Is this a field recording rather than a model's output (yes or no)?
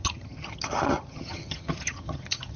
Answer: no